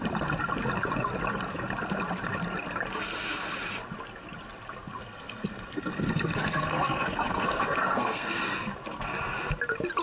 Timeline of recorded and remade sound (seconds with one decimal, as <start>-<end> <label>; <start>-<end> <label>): 0.0-5.0 recorded; 5.0-8.4 remade; 8.4-10.0 recorded